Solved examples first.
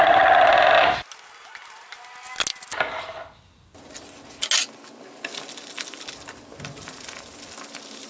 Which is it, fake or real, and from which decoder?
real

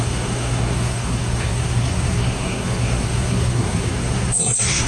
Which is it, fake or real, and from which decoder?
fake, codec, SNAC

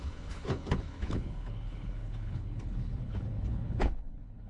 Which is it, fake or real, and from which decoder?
fake, codec, HILCodec